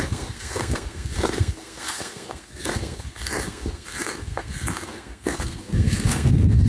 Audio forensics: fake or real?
fake